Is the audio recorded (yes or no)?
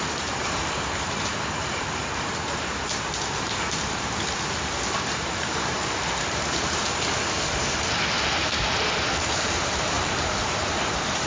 no